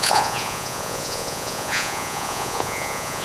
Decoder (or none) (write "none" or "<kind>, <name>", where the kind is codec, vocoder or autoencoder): vocoder, Vocos